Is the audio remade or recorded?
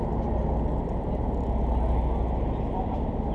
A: recorded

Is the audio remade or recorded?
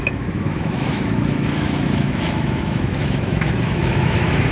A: remade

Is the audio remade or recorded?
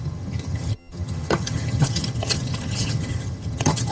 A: remade